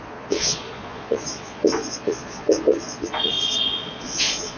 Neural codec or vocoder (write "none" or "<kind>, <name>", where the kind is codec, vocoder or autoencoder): vocoder, Vocos